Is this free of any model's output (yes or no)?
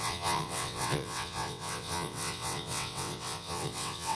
no